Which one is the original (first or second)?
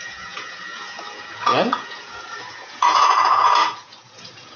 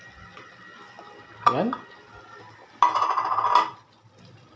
second